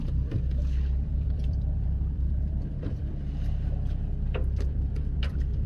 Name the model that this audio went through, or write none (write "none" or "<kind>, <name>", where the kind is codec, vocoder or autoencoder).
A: vocoder, BigVGAN v2